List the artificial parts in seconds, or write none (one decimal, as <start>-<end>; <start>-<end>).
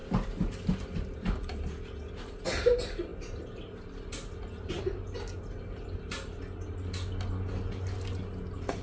none